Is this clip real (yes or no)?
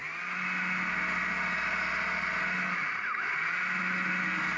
yes